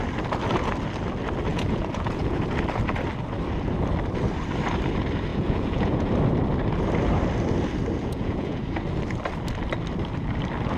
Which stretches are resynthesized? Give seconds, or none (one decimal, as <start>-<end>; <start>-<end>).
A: 1.5-2.4; 5.3-6.1; 8.0-8.6